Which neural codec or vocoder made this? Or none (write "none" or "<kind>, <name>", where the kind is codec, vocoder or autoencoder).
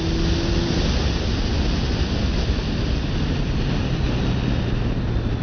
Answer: none